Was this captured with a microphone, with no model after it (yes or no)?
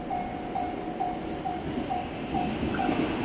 yes